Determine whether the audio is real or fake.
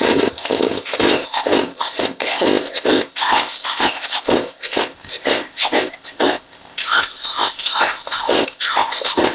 fake